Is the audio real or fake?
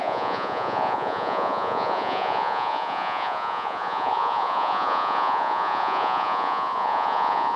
fake